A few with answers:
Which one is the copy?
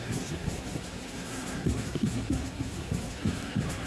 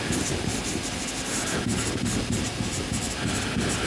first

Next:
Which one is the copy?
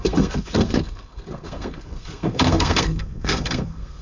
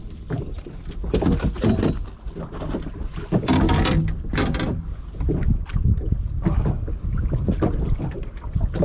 first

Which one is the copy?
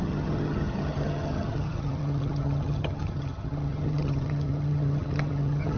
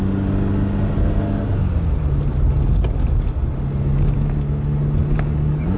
first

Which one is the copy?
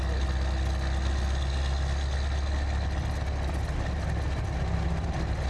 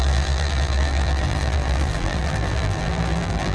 second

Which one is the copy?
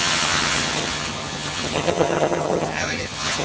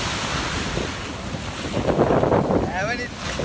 first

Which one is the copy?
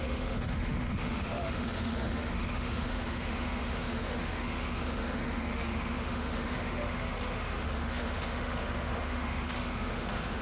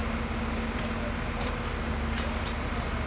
first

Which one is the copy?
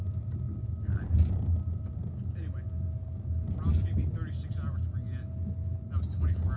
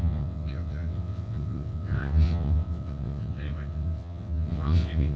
second